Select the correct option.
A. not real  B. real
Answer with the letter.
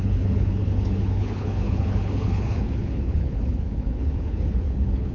A